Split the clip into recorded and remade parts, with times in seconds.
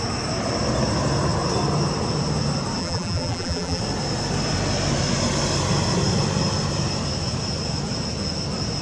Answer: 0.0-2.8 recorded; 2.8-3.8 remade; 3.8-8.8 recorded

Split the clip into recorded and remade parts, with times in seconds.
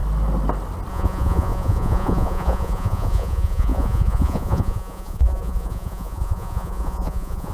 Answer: 0.0-0.9 recorded; 0.9-7.5 remade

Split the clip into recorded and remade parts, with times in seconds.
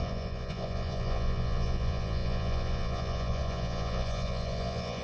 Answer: 0.0-5.0 remade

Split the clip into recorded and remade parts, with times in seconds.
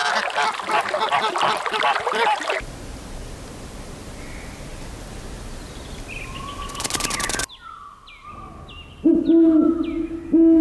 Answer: 0.0-10.6 recorded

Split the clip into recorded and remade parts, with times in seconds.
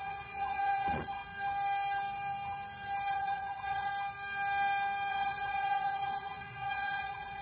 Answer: 0.0-1.2 remade; 1.2-3.1 recorded; 3.1-3.9 remade; 3.9-5.1 recorded; 5.1-7.4 remade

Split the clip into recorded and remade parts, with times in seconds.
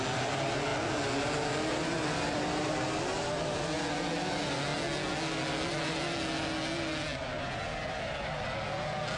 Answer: 0.0-9.2 recorded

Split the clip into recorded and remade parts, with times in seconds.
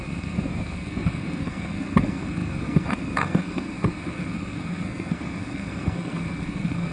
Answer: 0.0-6.9 remade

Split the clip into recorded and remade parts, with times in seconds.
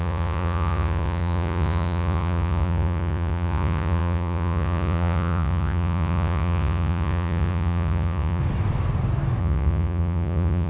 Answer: 0.0-8.4 remade; 8.4-9.4 recorded; 9.4-10.7 remade